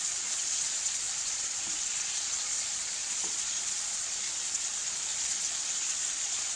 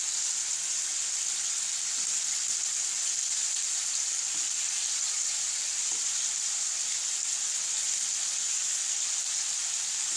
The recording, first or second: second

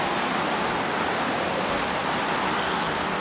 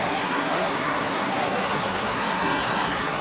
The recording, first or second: first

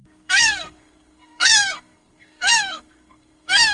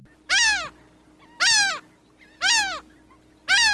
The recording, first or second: second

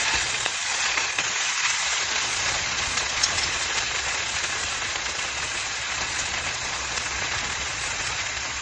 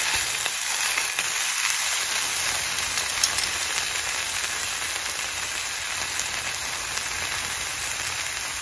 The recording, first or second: second